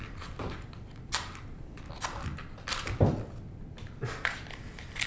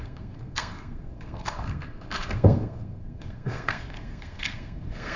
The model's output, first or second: second